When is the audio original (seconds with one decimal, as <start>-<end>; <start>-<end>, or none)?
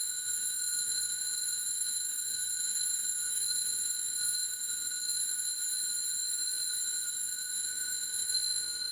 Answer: 5.5-7.1